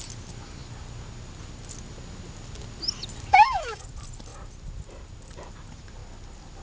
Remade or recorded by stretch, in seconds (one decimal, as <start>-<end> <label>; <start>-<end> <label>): 0.0-3.3 recorded; 3.3-3.8 remade; 3.8-6.6 recorded